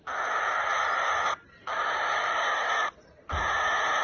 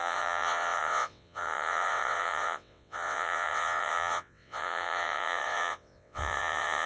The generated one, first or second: second